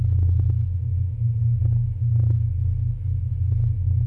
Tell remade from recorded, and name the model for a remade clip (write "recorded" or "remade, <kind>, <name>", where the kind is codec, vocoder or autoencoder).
recorded